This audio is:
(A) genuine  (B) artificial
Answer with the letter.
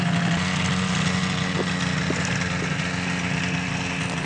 A